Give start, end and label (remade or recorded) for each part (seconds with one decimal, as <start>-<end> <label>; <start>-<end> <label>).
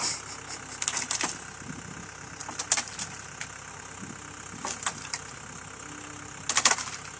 0.0-7.2 recorded